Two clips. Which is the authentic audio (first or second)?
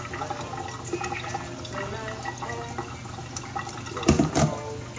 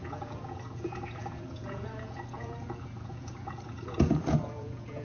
first